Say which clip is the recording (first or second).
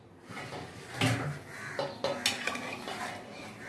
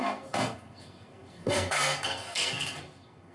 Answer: first